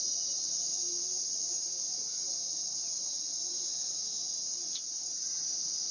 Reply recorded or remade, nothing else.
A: recorded